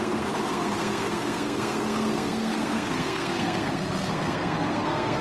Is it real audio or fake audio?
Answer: fake